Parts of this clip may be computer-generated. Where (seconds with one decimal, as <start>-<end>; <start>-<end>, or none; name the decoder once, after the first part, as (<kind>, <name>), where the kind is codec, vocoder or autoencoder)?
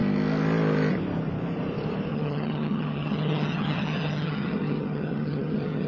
2.1-5.9 (vocoder, HiFi-GAN)